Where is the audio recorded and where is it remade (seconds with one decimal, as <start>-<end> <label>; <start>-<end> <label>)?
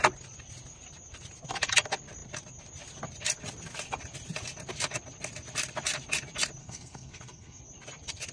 0.0-6.6 recorded; 6.6-7.6 remade; 7.6-8.3 recorded